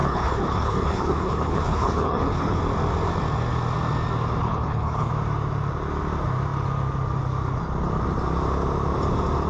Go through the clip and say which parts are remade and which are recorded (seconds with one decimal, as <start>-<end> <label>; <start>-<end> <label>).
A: 0.0-2.6 remade; 2.6-4.4 recorded; 4.4-5.1 remade; 5.1-9.5 recorded